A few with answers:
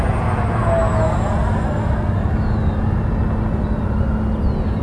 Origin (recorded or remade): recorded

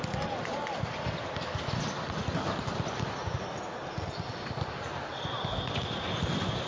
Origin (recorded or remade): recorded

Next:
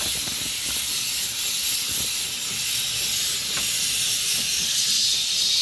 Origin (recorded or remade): recorded